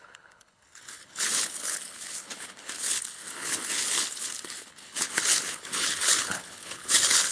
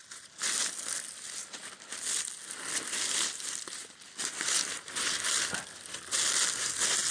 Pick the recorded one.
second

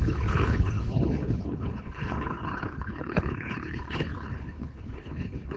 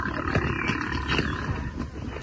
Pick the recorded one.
second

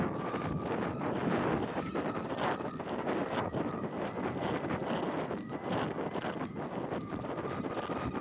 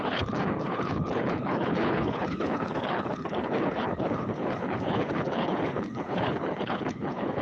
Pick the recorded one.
first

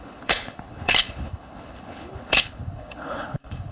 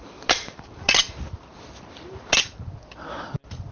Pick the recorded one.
second